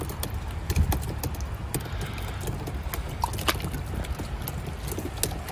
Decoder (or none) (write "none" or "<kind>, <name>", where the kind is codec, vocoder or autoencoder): none